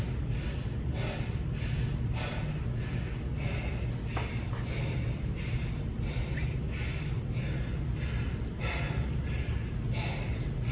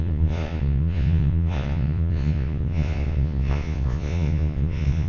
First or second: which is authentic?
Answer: first